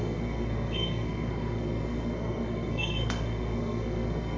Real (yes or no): no